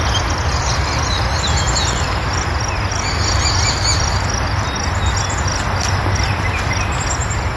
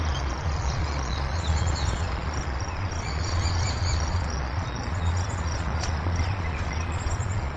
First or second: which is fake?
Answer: second